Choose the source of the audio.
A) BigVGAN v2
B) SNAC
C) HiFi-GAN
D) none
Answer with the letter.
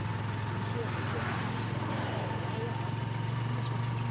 D